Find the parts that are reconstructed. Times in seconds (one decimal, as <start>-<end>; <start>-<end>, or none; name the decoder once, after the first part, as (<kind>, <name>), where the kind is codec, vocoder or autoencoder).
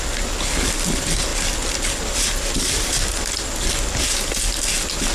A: none